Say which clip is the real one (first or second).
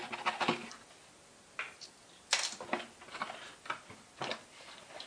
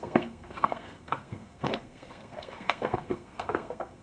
first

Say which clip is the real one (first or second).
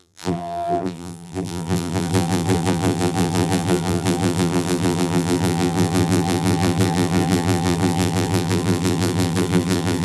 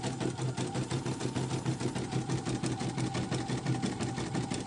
second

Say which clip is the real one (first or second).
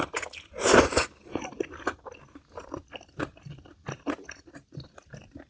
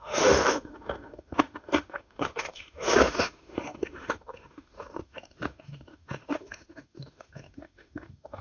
first